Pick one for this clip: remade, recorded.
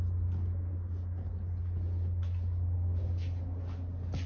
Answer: recorded